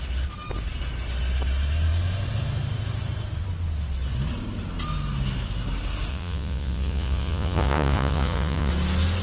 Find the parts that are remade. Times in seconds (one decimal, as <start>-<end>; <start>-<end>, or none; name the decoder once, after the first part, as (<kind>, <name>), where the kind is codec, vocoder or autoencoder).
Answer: 6.1-8.7 (vocoder, Vocos)